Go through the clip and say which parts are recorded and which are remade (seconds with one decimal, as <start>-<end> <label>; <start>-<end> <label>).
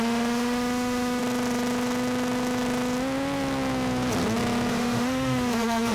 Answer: 0.0-1.2 remade; 1.2-4.7 recorded; 4.7-5.9 remade